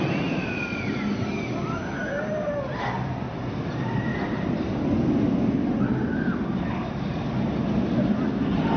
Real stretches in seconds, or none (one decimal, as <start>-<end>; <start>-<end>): 0.0-8.8